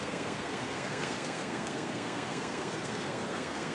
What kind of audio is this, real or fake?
fake